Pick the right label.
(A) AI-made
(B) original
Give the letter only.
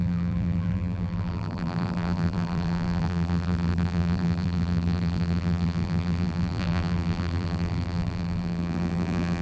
A